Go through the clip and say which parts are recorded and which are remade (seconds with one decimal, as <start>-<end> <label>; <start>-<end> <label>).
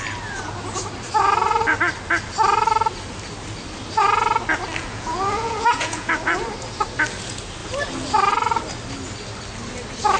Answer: 0.0-4.8 recorded; 4.8-6.1 remade; 6.1-10.2 recorded